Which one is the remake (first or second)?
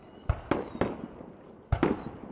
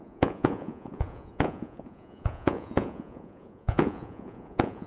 second